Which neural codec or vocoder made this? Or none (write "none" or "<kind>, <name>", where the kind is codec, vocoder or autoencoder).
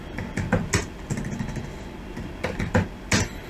none